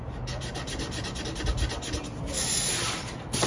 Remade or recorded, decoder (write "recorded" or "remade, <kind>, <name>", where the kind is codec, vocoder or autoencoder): recorded